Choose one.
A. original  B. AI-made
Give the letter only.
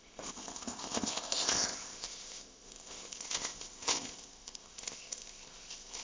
B